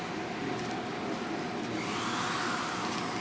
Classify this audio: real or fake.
real